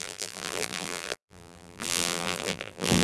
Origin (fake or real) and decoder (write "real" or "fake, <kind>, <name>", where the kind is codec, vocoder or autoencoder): fake, vocoder, BigVGAN v2